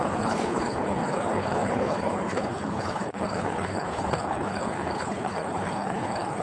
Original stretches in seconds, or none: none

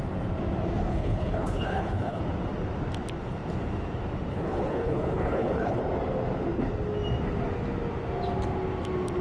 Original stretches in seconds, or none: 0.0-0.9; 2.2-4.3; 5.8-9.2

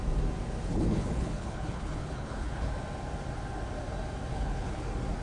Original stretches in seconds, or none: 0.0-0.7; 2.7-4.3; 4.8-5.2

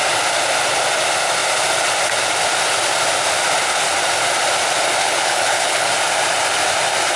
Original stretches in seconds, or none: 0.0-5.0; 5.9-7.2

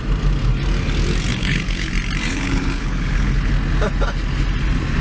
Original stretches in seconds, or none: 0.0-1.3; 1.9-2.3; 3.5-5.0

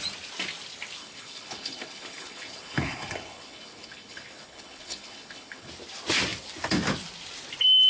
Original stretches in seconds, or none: 0.0-1.0; 5.7-7.9

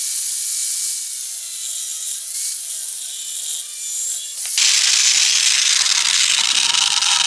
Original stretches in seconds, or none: 0.0-7.3